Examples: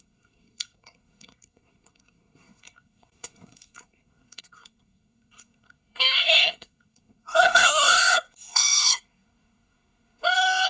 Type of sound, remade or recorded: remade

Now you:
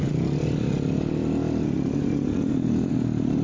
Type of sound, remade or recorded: recorded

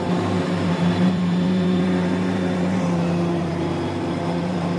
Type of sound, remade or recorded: remade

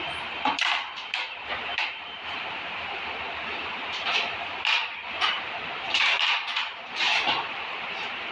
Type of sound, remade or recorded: remade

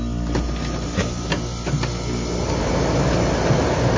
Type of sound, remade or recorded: recorded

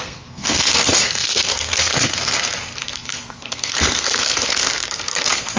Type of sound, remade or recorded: remade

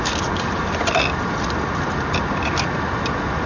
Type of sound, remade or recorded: recorded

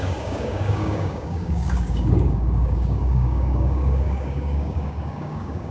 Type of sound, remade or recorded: remade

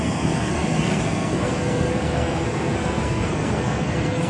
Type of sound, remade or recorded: remade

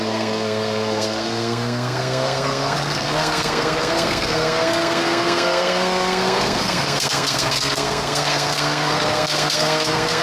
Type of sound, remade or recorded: remade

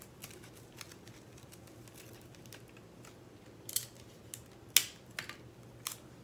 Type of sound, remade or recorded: recorded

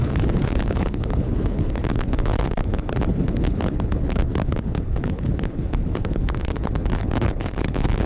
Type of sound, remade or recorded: remade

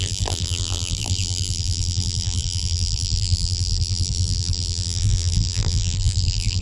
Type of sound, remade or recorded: remade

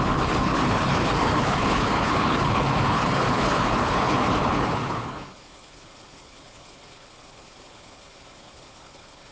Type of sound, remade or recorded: remade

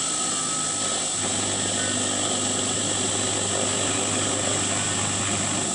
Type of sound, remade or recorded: recorded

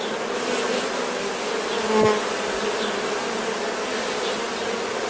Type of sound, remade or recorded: recorded